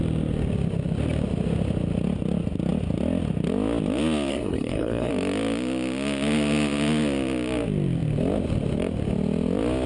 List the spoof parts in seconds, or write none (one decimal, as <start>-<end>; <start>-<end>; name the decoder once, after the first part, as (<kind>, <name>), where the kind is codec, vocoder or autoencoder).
4.3-5.1 (codec, SNAC)